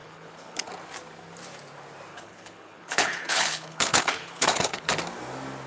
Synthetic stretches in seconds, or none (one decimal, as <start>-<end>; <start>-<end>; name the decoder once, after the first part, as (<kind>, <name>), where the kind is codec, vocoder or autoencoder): 0.0-0.7 (codec, HILCodec); 2.1-4.9